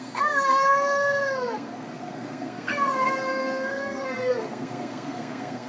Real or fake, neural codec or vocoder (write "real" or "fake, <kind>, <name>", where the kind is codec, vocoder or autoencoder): fake, codec, SNAC